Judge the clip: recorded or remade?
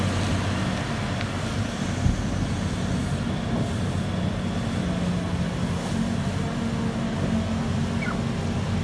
recorded